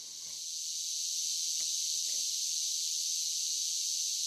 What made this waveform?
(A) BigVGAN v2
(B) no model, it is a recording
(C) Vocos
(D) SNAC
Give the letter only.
B